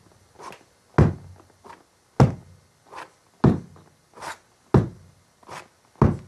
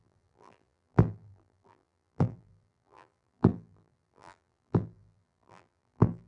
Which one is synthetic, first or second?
second